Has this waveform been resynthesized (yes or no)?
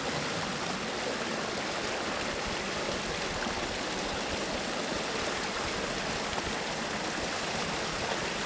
no